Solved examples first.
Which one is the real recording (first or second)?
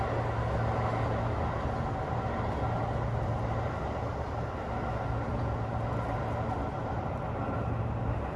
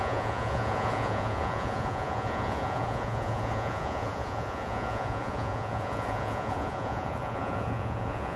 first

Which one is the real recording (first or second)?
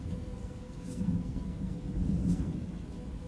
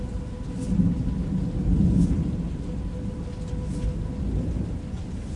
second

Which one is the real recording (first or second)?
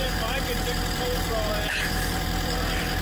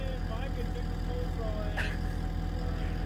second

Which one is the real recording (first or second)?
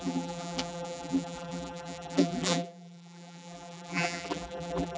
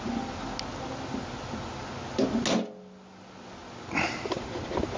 second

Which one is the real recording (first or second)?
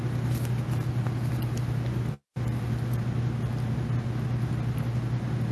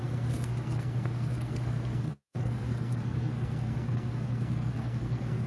first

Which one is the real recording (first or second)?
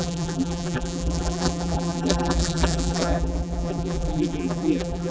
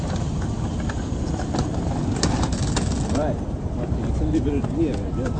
second